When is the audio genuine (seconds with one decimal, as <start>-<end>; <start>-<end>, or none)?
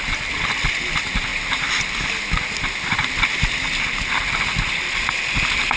0.0-5.8